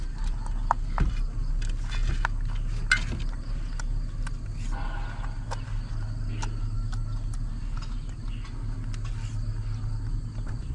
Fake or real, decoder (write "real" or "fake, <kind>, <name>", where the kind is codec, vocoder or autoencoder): real